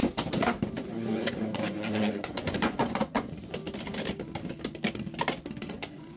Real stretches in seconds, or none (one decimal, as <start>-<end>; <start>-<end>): 0.0-0.9; 3.6-5.7